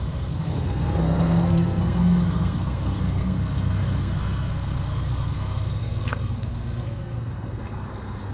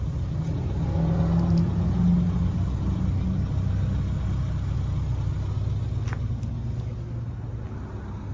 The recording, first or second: second